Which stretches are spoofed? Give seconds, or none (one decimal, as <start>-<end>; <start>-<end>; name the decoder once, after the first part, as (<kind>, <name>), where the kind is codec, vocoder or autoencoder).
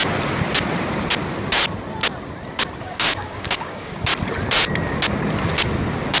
2.8-4.1 (codec, DAC)